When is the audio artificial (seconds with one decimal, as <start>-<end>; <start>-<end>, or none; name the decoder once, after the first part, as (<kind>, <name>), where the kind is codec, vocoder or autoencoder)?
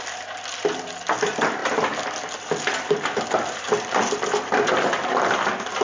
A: none